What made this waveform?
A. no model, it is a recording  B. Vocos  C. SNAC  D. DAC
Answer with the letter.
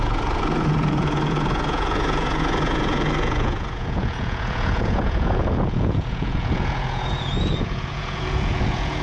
B